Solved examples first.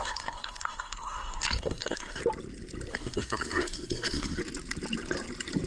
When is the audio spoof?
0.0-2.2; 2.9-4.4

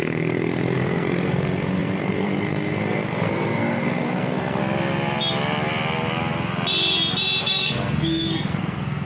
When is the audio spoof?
0.0-4.6; 7.4-9.0

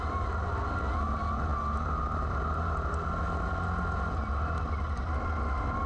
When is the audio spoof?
none

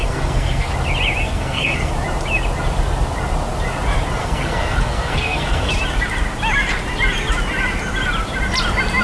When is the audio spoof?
0.0-0.7; 1.2-1.9; 4.2-5.7

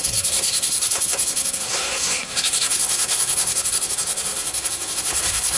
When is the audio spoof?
0.0-5.6